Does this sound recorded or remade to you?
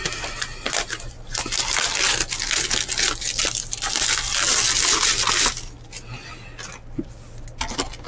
recorded